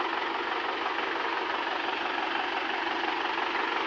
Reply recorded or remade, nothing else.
recorded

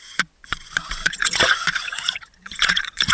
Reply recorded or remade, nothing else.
remade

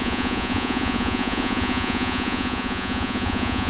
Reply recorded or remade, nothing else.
remade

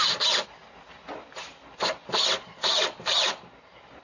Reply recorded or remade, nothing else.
recorded